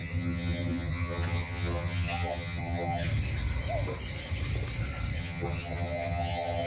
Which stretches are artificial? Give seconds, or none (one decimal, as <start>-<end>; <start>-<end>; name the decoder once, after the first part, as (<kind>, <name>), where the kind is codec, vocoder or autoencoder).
0.0-3.1 (vocoder, HiFi-GAN); 5.2-6.7